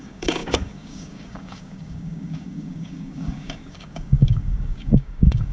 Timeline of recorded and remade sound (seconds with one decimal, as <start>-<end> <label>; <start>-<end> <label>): 0.0-5.5 remade